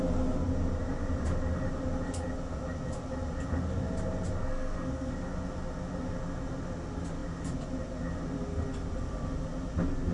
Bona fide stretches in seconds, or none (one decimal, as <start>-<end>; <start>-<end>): 0.0-4.4; 5.1-10.1